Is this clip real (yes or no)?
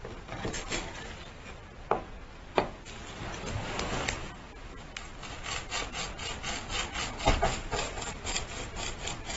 yes